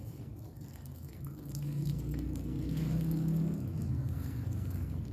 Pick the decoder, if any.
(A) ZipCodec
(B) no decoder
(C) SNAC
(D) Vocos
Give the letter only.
C